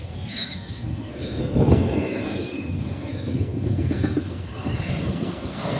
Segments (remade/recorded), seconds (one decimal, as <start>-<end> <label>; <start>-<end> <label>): 0.0-5.8 remade